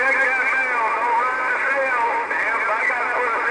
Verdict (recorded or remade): recorded